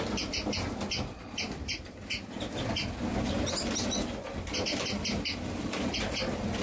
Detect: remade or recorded recorded